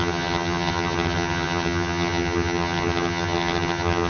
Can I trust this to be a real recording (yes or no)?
no